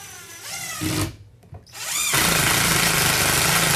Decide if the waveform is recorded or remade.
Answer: recorded